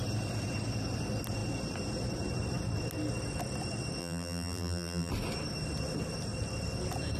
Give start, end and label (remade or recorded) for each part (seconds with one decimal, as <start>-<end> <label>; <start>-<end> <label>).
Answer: 0.0-4.0 recorded; 4.0-5.1 remade; 5.1-7.2 recorded